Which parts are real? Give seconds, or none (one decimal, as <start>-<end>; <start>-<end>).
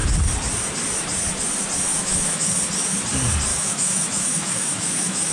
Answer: 0.0-1.9; 2.6-3.5